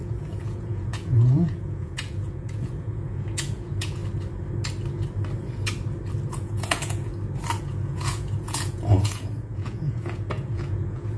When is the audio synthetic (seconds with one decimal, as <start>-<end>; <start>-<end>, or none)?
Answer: 0.0-4.0; 6.3-7.1; 7.6-11.2